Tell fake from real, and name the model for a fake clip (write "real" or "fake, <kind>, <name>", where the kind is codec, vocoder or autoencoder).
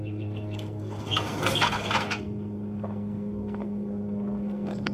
fake, codec, SNAC